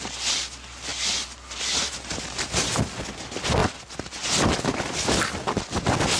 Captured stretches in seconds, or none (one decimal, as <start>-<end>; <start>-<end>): 0.0-6.2